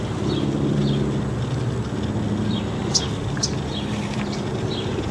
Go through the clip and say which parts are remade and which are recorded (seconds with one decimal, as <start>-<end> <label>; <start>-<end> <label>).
0.0-0.8 remade; 0.8-3.9 recorded; 3.9-5.1 remade